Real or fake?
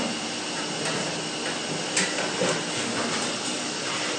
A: real